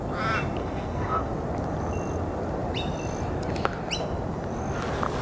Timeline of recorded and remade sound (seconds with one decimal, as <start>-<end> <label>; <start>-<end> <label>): 0.0-0.6 recorded; 0.6-1.3 remade; 1.3-5.2 recorded